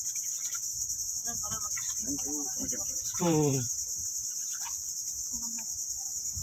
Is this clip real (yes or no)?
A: yes